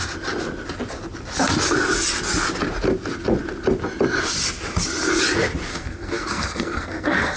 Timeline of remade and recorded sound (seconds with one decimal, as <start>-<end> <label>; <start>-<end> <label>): 0.0-5.7 recorded; 5.7-7.4 remade